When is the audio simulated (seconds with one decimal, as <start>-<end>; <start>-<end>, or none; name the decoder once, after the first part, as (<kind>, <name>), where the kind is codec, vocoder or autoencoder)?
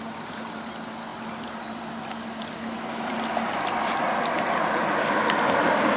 none